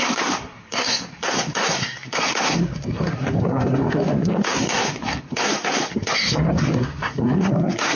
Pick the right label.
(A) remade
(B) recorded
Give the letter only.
A